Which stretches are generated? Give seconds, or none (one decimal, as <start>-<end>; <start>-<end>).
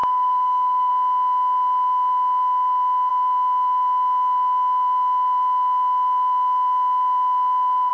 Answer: 0.0-0.9